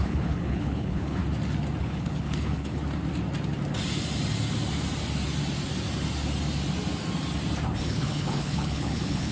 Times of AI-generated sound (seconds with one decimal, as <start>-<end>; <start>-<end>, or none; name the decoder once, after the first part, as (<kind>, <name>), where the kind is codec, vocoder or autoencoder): 0.0-1.2 (codec, HILCodec); 1.8-2.8; 7.8-9.3